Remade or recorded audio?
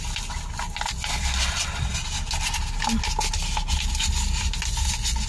recorded